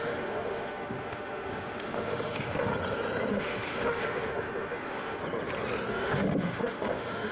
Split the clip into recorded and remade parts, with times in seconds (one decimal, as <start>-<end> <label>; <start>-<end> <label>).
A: 0.0-2.7 remade; 2.7-3.3 recorded; 3.3-5.2 remade; 5.2-5.9 recorded; 5.9-7.3 remade